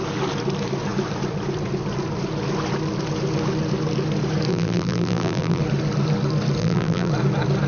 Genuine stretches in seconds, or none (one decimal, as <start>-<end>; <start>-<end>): 0.0-4.5; 5.6-6.6; 7.1-7.7